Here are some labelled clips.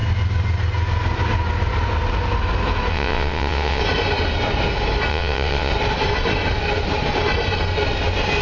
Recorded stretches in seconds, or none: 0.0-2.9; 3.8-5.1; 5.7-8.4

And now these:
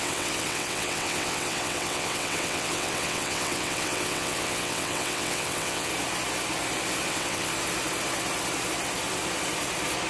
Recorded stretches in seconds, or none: 5.9-7.1; 7.5-10.1

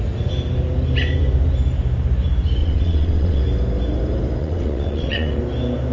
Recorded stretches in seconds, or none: 0.0-2.6; 3.4-4.4; 5.4-5.9

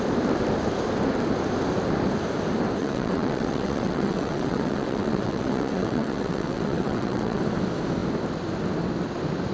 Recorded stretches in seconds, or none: 0.0-2.8; 7.4-9.5